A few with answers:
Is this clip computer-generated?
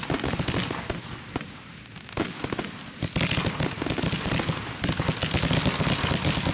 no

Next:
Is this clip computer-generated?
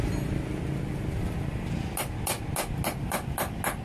no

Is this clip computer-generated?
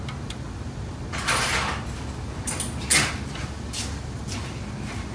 no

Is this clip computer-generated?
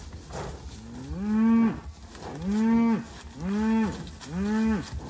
no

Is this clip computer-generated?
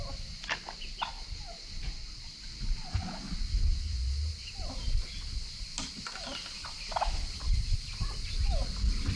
no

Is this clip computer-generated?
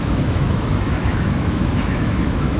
yes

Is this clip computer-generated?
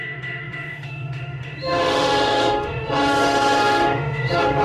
yes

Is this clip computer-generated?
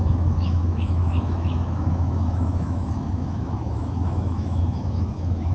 yes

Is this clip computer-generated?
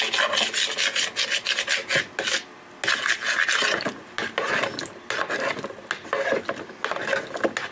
no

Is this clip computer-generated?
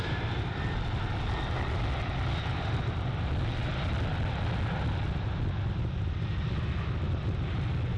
no